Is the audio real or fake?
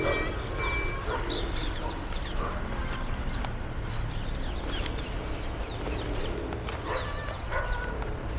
real